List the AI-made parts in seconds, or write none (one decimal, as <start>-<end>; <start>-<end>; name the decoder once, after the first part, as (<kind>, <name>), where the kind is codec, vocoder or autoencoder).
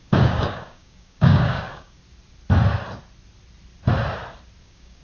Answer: 0.0-2.0 (codec, DAC); 4.6-5.0